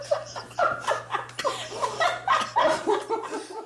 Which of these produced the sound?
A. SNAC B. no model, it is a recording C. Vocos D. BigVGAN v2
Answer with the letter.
D